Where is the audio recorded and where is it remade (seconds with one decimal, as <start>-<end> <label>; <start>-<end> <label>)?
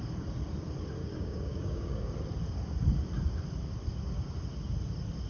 0.0-1.0 recorded; 1.0-2.1 remade; 2.1-5.3 recorded